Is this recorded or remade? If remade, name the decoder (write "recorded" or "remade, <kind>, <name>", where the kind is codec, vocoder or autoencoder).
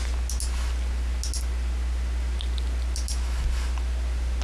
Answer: recorded